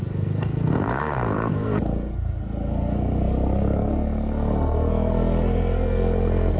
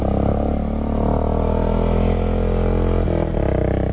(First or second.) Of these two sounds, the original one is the second